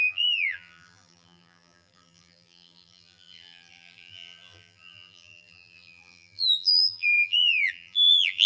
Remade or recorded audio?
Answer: remade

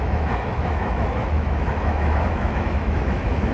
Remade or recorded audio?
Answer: remade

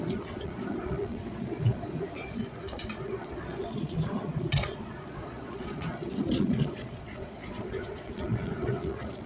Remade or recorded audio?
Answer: remade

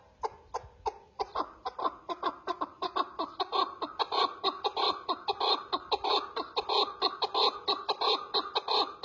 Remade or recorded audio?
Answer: recorded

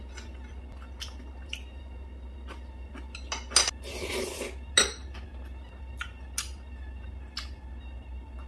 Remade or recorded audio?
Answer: recorded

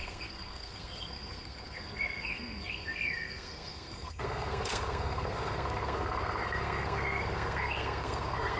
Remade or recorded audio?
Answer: remade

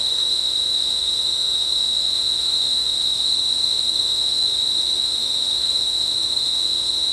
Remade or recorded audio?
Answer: remade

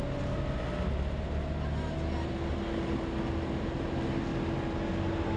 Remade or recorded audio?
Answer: recorded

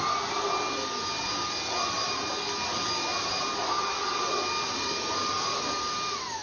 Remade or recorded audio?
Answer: recorded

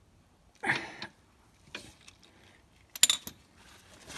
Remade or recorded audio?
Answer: recorded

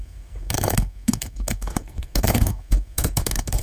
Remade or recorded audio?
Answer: remade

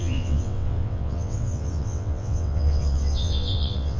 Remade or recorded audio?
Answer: remade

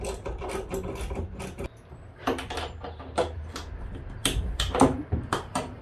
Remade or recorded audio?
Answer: remade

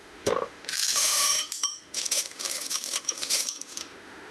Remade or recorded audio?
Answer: remade